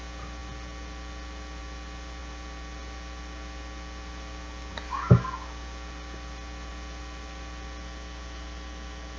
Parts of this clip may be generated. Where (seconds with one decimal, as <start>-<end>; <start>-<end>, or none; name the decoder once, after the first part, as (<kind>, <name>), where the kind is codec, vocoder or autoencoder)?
none